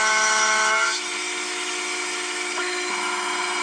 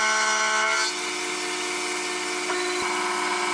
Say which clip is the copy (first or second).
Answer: first